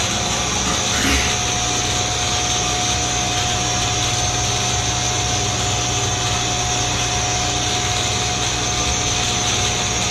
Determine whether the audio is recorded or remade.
recorded